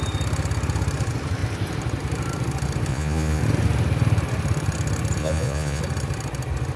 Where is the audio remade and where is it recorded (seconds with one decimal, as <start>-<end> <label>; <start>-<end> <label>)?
0.0-2.9 recorded; 2.9-3.4 remade; 3.4-5.2 recorded; 5.2-5.8 remade; 5.8-6.8 recorded